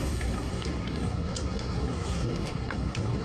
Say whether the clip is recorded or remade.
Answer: remade